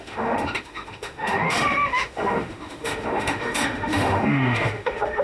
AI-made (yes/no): yes